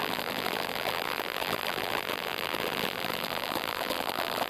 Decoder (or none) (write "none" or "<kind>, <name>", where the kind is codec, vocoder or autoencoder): vocoder, BigVGAN v2